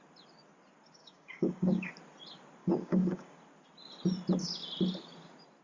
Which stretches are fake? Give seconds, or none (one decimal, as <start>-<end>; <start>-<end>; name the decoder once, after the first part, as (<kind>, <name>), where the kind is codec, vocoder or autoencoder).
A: 1.0-1.9 (codec, DAC); 2.6-3.4